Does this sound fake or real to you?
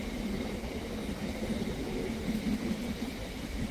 real